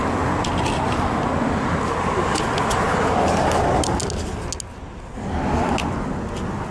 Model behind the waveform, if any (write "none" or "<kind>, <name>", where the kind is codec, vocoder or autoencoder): none